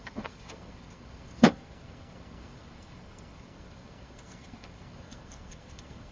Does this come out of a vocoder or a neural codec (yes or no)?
yes